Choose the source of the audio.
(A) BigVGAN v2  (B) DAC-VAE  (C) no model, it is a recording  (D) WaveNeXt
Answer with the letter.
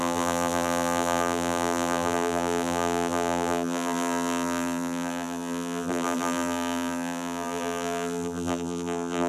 A